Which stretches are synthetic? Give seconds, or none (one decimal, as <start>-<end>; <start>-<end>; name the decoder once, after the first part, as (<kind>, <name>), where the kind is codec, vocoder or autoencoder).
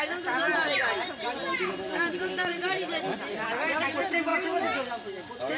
none